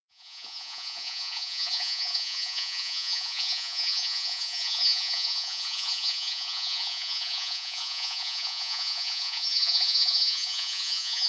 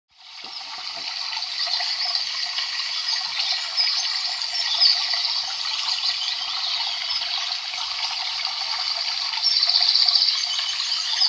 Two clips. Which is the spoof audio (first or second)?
first